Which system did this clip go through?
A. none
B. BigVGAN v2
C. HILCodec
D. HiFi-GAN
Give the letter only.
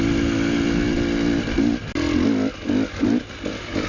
A